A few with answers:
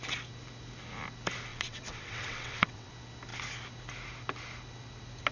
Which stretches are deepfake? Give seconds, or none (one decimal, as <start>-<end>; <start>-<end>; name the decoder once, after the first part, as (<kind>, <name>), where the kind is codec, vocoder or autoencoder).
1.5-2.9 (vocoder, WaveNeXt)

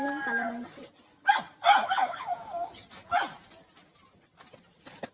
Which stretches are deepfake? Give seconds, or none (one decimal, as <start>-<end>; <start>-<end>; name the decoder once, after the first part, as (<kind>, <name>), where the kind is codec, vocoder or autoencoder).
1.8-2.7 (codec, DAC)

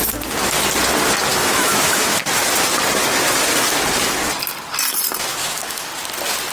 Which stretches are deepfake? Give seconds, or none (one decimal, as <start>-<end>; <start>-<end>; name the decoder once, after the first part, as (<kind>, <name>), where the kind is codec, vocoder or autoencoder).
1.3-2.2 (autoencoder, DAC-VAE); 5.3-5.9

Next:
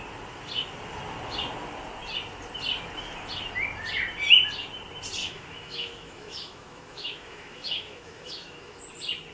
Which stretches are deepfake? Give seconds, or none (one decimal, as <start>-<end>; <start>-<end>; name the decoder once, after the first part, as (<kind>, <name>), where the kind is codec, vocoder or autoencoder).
5.2-8.8 (autoencoder, DAC-VAE)

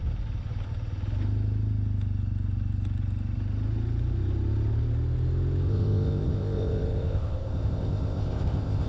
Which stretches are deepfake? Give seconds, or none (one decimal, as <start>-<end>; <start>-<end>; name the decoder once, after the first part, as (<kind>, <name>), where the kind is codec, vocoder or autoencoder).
5.7-8.9 (codec, ZipCodec)